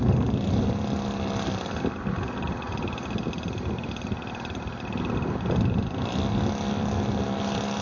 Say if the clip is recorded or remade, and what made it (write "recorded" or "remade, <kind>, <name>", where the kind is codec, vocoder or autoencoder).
recorded